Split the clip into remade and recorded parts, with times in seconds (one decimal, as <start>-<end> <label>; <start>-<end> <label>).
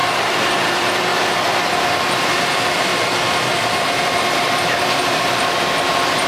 0.0-0.6 recorded; 0.6-1.1 remade; 1.1-2.0 recorded; 2.0-6.3 remade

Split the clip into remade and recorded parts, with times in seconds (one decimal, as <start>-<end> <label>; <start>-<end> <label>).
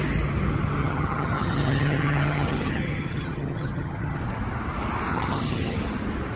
0.0-0.8 recorded; 0.8-4.2 remade; 4.2-5.1 recorded; 5.1-5.8 remade; 5.8-6.4 recorded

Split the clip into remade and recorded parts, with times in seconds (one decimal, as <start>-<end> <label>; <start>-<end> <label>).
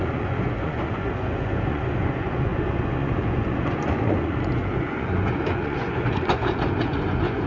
0.0-7.5 remade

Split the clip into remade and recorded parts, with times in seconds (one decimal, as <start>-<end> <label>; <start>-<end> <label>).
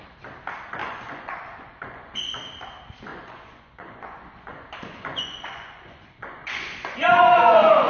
0.0-0.8 recorded; 0.8-2.4 remade; 2.4-3.1 recorded; 3.1-7.9 remade